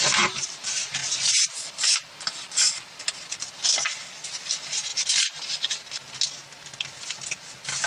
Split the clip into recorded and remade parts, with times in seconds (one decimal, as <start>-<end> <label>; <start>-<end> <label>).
0.0-7.9 recorded